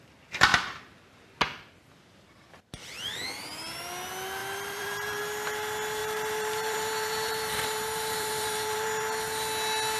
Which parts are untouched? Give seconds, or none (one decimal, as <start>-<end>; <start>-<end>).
0.0-4.4; 5.2-6.0; 9.0-10.0